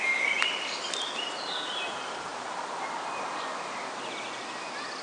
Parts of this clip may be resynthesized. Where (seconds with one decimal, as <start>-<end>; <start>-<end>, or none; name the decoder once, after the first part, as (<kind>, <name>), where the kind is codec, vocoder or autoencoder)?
none